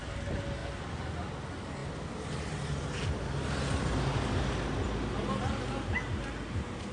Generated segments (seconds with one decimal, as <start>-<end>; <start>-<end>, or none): none

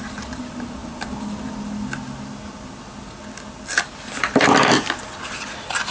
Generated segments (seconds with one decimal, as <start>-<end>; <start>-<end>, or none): none

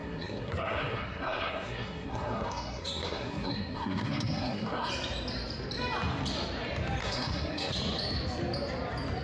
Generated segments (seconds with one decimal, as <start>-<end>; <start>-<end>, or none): 0.0-4.9; 7.0-7.7